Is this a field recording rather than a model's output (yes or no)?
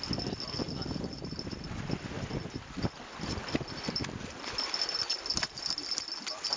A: yes